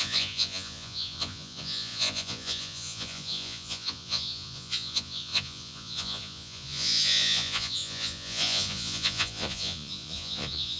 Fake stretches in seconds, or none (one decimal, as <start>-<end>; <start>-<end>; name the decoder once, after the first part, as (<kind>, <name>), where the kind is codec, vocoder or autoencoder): 0.0-10.8 (vocoder, Vocos)